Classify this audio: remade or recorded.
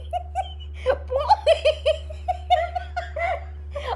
recorded